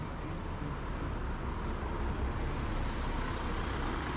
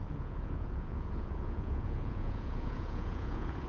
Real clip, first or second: first